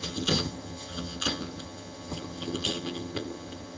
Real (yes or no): no